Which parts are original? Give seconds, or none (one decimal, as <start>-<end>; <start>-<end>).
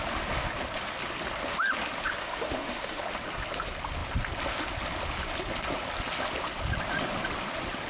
0.0-2.2; 3.0-7.9